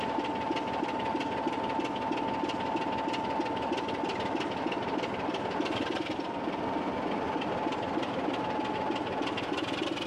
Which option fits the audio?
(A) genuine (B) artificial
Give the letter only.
A